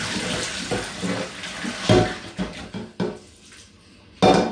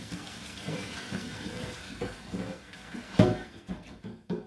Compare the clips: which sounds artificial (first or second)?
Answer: second